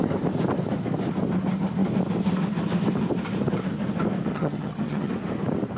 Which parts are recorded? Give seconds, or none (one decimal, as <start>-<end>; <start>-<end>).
0.0-4.3; 5.1-5.8